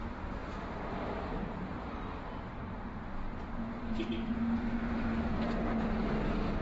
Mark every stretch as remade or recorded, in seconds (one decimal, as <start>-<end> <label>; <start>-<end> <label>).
0.0-0.4 recorded; 0.4-2.2 remade; 2.2-3.8 recorded; 3.8-6.0 remade; 6.0-6.6 recorded